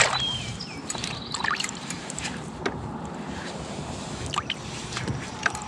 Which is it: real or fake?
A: fake